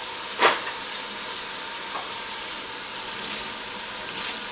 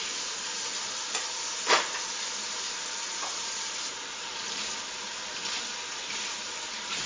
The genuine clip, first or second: first